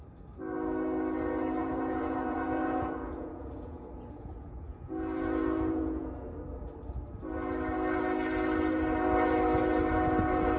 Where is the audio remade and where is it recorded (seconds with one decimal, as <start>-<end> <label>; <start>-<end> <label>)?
0.0-1.6 recorded; 1.6-6.3 remade; 6.3-10.6 recorded